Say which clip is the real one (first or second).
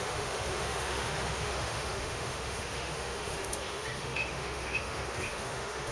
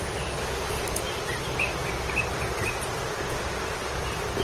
second